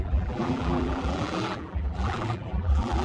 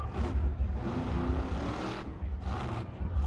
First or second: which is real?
second